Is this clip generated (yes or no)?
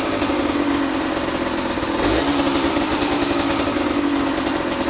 no